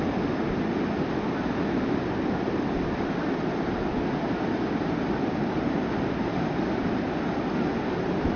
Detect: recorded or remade recorded